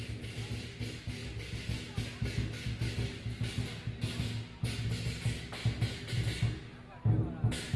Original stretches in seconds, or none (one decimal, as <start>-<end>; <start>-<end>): 0.0-7.8